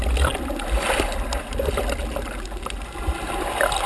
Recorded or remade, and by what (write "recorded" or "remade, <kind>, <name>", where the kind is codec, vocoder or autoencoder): recorded